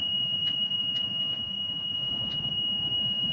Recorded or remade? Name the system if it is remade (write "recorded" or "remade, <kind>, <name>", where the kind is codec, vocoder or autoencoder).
remade, vocoder, Vocos